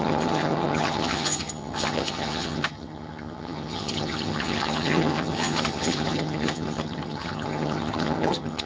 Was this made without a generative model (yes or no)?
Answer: no